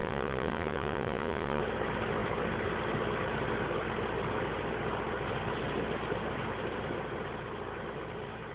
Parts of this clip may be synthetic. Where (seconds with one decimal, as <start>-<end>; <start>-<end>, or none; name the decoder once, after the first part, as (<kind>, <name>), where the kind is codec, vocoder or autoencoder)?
0.0-1.6 (vocoder, Vocos)